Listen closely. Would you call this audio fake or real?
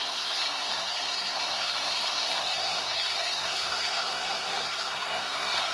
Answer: fake